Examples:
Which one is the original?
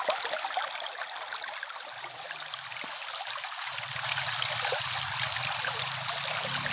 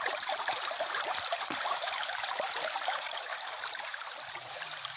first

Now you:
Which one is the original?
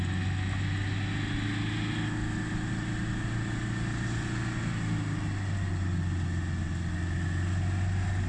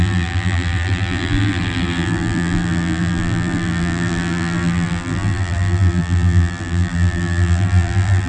first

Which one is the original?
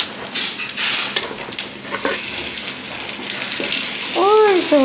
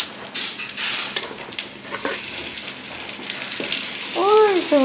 first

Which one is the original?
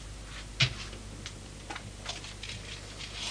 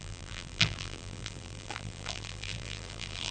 first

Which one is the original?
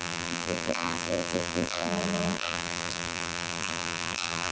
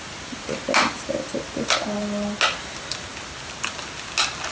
second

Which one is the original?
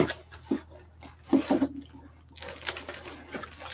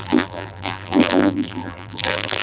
first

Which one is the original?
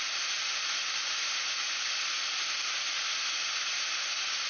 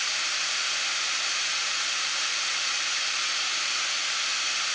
first